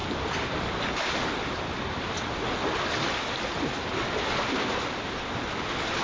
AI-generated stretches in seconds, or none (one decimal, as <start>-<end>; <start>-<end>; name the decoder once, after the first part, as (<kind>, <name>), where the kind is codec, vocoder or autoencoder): 0.0-3.6 (vocoder, BigVGAN v2)